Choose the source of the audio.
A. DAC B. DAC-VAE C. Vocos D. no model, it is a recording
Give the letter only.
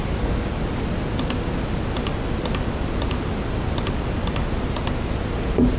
D